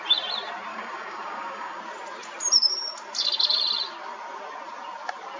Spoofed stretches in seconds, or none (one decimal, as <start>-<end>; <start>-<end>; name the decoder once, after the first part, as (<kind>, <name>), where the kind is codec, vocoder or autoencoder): 0.7-1.8 (codec, DAC)